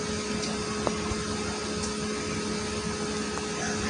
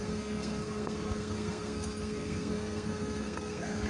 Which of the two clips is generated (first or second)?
second